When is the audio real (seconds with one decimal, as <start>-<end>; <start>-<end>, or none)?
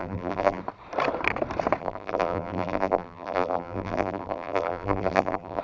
0.6-1.8